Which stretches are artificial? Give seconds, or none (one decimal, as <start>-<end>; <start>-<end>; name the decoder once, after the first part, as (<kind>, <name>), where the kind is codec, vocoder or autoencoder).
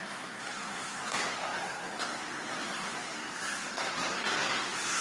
0.0-5.0 (codec, SNAC)